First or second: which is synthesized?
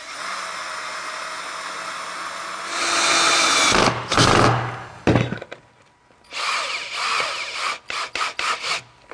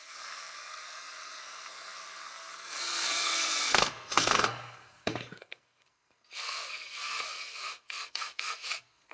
second